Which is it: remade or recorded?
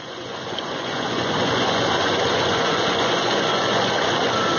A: remade